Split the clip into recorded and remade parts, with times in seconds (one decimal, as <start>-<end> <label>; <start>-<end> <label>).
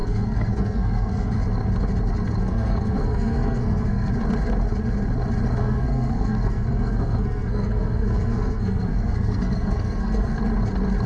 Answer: 0.0-1.4 remade; 1.4-2.4 recorded; 2.4-4.1 remade; 4.1-5.6 recorded; 5.6-10.4 remade; 10.4-11.1 recorded